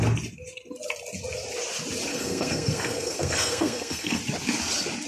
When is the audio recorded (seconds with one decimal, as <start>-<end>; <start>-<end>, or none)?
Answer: 0.0-2.1; 4.2-5.1